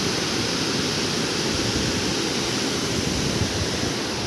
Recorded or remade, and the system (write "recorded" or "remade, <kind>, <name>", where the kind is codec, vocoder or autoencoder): recorded